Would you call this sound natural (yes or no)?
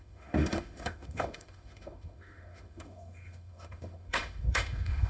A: no